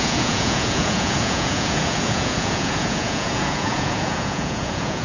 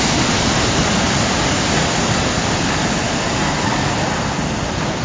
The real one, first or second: second